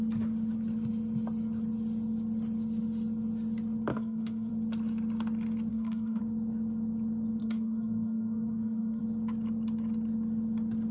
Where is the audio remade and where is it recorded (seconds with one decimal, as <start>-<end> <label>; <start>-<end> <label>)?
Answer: 0.0-3.9 recorded; 3.9-4.5 remade; 4.5-5.7 recorded; 5.7-6.2 remade; 6.2-7.4 recorded; 7.4-9.0 remade; 9.0-10.9 recorded